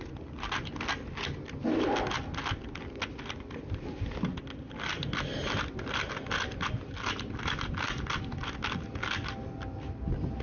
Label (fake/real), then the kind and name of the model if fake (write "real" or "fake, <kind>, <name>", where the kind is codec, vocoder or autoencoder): real